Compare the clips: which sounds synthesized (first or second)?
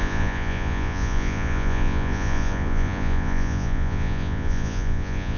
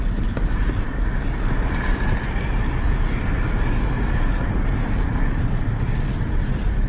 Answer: first